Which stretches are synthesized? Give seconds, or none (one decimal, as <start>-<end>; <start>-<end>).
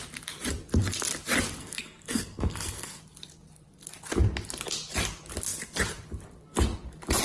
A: 1.6-3.0